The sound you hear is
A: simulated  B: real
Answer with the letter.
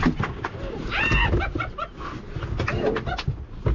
B